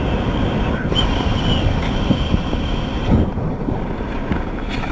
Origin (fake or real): real